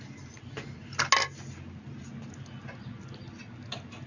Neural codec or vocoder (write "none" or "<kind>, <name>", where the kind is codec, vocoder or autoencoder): none